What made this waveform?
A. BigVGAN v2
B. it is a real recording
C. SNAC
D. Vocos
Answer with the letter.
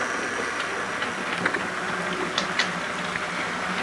B